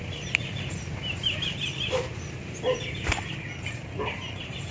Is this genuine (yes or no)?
no